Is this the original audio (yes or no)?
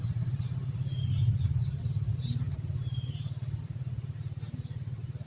yes